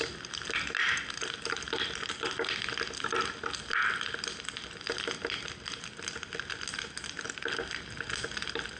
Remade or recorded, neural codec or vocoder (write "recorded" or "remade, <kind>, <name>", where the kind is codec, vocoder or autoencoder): recorded